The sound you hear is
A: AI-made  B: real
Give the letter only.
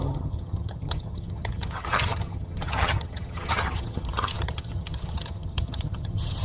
A